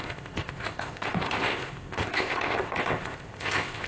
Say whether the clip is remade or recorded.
remade